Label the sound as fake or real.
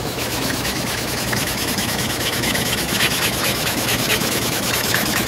fake